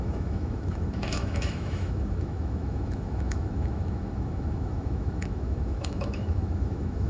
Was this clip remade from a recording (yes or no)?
yes